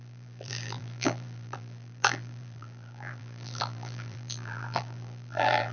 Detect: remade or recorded remade